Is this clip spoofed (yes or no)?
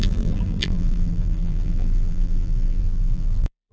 yes